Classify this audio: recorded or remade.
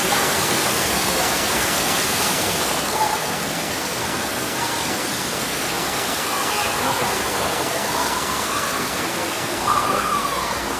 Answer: remade